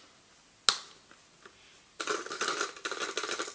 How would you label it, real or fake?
real